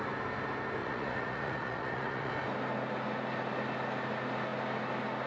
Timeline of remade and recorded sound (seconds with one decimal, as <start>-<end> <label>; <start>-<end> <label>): 0.0-0.8 recorded; 0.8-2.3 remade; 2.3-5.3 recorded

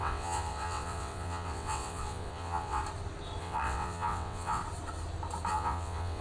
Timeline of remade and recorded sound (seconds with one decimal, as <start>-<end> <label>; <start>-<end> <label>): 0.0-2.8 remade; 2.8-3.4 recorded; 3.4-4.6 remade; 4.6-5.5 recorded; 5.5-6.2 remade

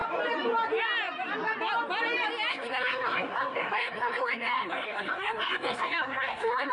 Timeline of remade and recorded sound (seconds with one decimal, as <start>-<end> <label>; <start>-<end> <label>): 0.0-2.5 recorded; 2.5-6.7 remade